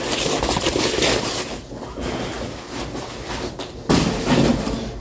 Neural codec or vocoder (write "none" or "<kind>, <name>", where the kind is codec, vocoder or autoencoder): none